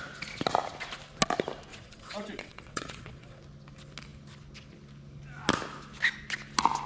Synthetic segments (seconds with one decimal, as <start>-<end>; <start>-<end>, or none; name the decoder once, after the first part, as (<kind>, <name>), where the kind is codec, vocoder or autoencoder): 1.7-3.4 (vocoder, WaveNeXt)

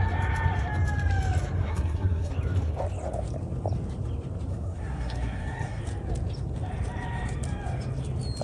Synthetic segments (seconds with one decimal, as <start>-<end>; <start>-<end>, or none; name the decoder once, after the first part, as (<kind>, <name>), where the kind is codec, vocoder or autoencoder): 1.7-2.3 (codec, SNAC); 4.5-5.8

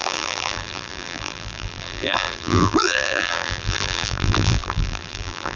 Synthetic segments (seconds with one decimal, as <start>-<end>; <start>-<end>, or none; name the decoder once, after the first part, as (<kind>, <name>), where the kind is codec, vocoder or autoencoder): 0.0-5.6 (vocoder, BigVGAN v2)

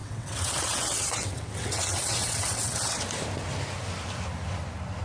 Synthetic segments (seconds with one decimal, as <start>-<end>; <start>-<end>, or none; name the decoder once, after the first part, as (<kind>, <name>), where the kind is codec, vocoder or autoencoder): 0.0-3.0 (vocoder, WaveNeXt)

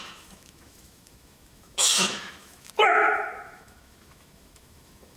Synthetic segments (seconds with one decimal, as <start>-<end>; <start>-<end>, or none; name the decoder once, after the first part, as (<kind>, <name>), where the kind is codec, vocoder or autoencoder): 0.0-5.2 (autoencoder, DAC-VAE)

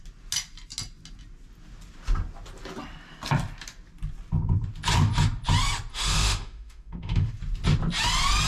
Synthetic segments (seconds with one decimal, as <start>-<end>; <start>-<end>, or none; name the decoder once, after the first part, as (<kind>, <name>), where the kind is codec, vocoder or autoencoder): 5.9-7.3 (autoencoder, DAC-VAE)